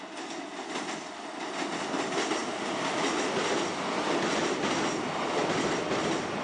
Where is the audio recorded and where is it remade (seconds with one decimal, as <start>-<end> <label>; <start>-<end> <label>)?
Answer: 0.0-6.4 recorded